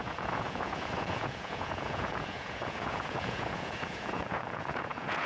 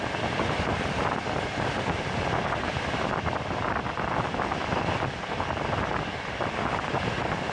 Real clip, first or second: second